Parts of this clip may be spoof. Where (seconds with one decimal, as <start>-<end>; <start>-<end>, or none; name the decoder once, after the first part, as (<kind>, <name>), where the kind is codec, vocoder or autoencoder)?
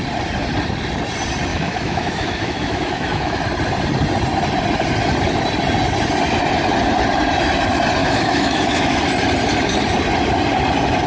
1.5-3.4 (autoencoder, DAC-VAE); 8.0-9.0